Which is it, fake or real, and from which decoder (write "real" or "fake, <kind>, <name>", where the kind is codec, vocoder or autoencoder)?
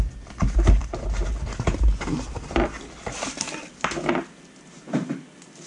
real